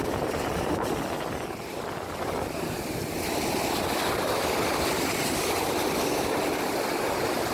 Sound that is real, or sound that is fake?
real